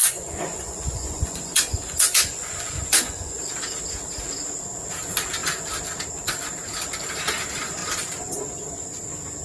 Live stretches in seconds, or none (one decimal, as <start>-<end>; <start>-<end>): 3.4-9.4